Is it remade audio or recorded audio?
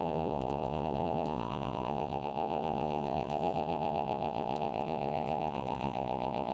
remade